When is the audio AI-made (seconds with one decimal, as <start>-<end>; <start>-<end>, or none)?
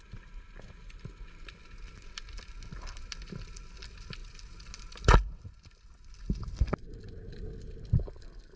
none